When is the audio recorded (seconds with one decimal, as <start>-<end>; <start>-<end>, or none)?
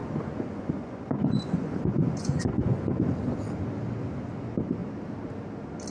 3.0-5.9